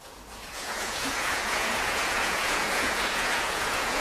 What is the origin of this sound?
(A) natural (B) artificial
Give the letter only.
B